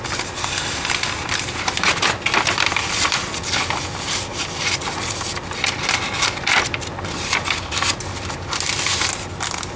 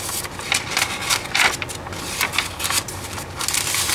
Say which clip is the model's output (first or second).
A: first